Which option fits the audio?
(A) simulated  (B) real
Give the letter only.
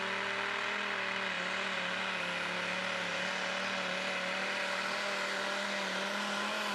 B